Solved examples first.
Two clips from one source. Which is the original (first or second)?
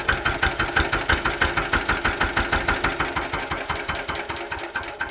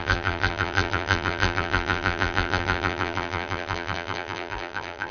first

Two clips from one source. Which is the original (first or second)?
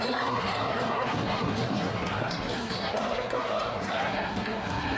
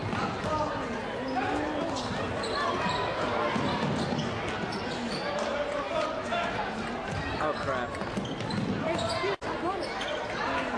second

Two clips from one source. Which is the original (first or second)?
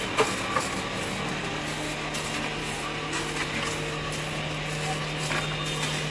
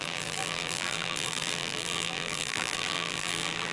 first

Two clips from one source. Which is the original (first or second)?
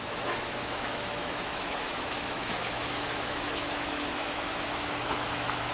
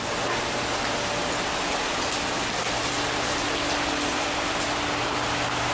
second